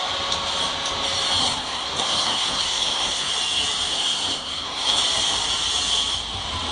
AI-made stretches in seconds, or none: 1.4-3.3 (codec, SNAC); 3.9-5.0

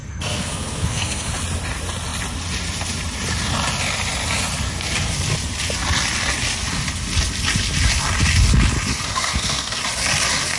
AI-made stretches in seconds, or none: 0.0-1.3 (codec, SNAC); 8.9-9.8

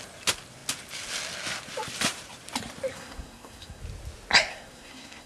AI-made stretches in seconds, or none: 2.9-3.8 (codec, SNAC); 4.5-5.3